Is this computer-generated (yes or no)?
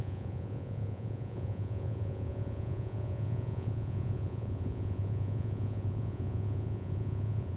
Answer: yes